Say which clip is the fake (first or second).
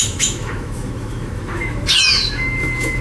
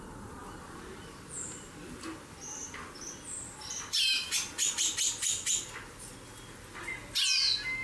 first